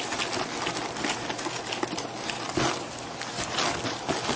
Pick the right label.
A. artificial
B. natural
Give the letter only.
B